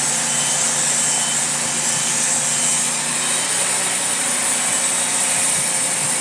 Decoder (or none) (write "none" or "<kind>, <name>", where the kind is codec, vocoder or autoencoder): none